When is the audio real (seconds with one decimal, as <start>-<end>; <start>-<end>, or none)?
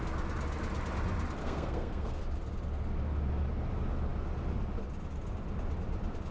0.0-1.4; 2.2-6.3